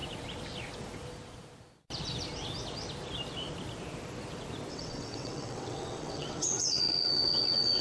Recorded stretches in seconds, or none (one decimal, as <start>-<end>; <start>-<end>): 0.0-4.7